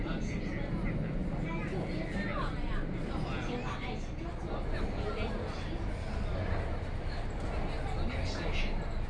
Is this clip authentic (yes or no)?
yes